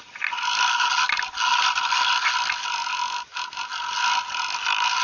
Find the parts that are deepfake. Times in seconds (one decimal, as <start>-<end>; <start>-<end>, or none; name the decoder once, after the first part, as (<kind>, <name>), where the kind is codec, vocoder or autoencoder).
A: none